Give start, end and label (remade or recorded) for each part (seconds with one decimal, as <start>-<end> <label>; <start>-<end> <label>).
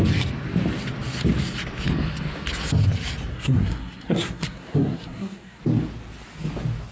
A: 0.0-3.3 recorded; 3.3-5.6 remade; 5.6-6.9 recorded